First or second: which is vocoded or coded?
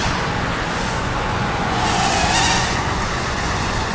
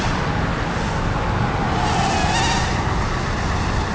first